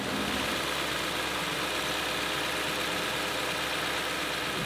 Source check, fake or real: real